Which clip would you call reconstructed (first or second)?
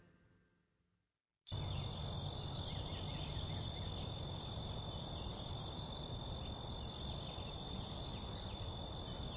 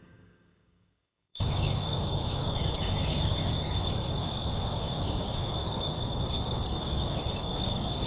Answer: second